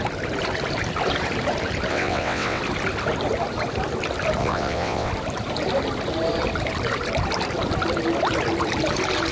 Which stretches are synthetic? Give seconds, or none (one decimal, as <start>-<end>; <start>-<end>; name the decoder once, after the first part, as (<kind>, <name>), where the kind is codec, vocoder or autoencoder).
1.9-2.6 (vocoder, WaveNeXt); 4.4-5.1